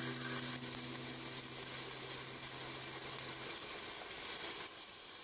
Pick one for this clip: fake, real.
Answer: real